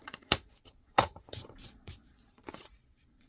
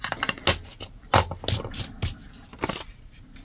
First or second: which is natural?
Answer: second